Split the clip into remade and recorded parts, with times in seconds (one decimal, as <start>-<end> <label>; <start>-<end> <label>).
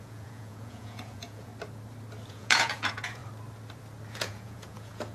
0.0-1.5 remade; 1.5-2.3 recorded; 2.3-3.2 remade; 3.2-4.1 recorded; 4.1-5.1 remade